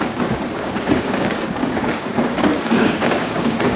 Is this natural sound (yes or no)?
no